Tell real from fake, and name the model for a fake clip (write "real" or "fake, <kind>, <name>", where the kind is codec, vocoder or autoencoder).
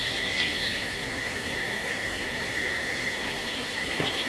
fake, codec, SNAC